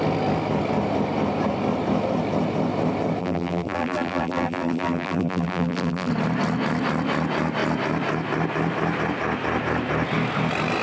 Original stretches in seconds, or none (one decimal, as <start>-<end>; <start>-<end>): 0.0-3.2; 6.1-10.8